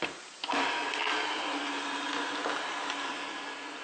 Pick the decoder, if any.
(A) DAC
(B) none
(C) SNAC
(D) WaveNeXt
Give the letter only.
B